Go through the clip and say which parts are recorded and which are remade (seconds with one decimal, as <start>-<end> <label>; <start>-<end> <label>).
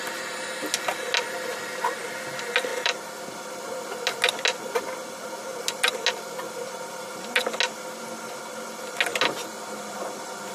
0.0-2.7 recorded; 2.7-3.6 remade; 3.6-10.5 recorded